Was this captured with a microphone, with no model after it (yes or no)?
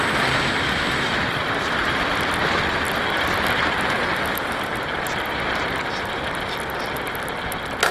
yes